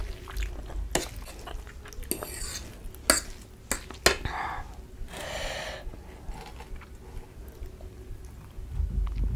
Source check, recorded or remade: recorded